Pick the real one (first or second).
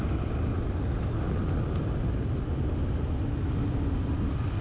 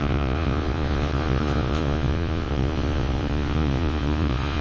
first